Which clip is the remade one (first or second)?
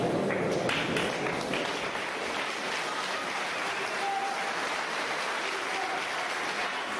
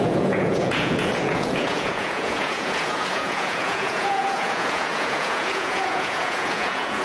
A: second